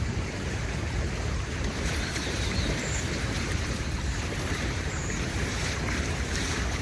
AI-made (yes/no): yes